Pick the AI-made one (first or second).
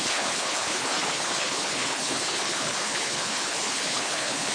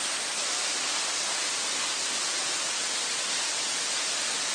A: first